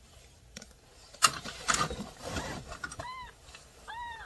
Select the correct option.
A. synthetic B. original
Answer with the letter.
A